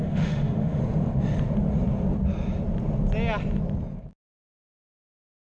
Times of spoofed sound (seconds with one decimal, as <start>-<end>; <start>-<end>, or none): 0.0-0.8; 4.2-5.6